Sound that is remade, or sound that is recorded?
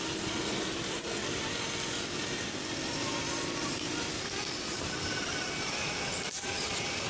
recorded